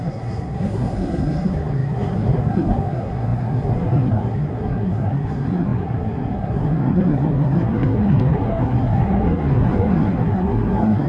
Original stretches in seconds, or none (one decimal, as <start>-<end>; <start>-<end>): none